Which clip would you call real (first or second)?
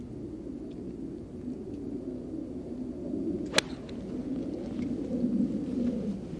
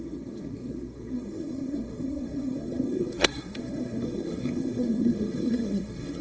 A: first